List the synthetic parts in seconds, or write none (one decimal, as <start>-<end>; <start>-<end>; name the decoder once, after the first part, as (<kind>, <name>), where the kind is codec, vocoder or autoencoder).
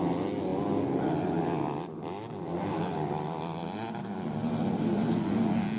none